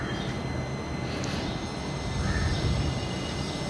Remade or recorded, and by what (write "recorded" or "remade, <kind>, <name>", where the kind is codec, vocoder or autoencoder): recorded